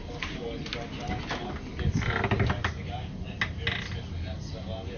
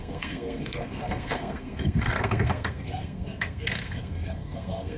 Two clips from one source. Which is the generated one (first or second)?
second